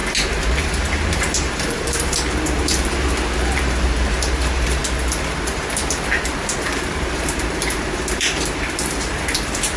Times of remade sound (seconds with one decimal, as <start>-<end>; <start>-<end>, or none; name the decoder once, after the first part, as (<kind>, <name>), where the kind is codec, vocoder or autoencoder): 0.6-4.8 (vocoder, BigVGAN v2); 6.8-9.8